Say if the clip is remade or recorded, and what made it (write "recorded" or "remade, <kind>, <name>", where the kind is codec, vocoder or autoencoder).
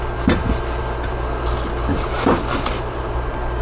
recorded